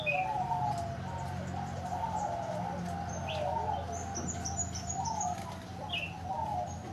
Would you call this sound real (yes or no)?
yes